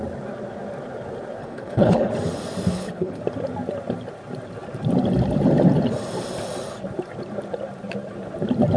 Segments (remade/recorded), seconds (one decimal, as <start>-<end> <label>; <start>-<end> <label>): 0.0-1.4 recorded; 1.4-2.1 remade; 2.1-2.7 recorded; 2.7-3.2 remade; 3.2-8.8 recorded